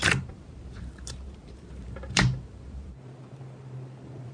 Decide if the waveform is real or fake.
fake